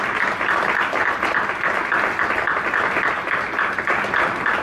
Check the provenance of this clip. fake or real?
real